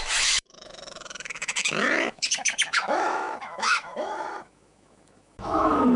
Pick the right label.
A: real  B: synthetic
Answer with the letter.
B